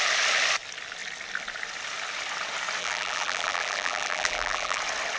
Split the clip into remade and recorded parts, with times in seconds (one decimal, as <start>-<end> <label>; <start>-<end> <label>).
0.0-2.8 recorded; 2.8-4.8 remade; 4.8-5.2 recorded